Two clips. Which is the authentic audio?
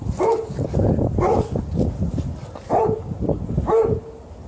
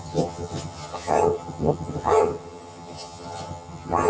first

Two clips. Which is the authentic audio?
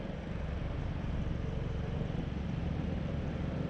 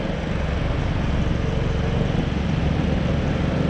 second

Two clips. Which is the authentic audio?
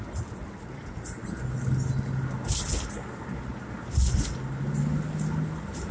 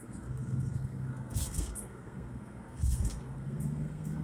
first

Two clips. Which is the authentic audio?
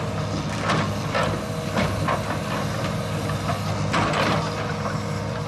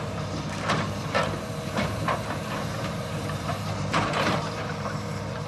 first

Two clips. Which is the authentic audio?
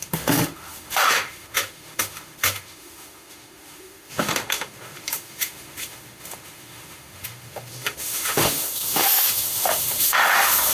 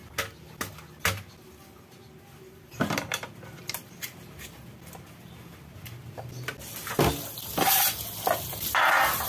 second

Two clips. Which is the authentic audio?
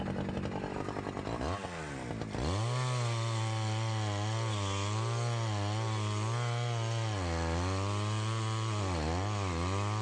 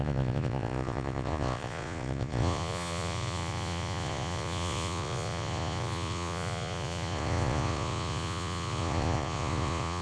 first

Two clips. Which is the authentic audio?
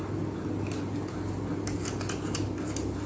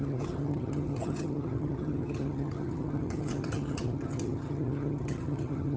first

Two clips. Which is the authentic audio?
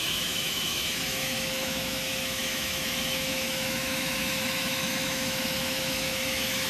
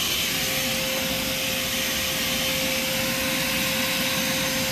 second